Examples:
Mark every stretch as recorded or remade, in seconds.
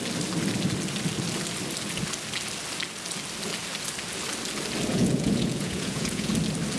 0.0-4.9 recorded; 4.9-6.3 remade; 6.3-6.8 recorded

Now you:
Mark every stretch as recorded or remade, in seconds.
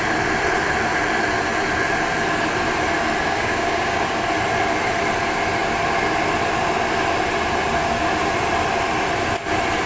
0.0-3.2 recorded; 3.2-4.1 remade; 4.1-9.9 recorded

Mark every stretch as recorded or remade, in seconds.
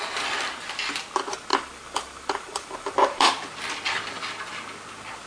0.0-1.5 recorded; 1.5-3.3 remade; 3.3-5.3 recorded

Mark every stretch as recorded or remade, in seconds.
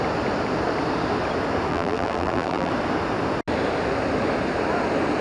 0.0-1.7 recorded; 1.7-2.7 remade; 2.7-5.2 recorded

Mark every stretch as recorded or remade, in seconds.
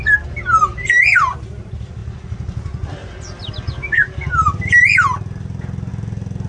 0.0-6.5 recorded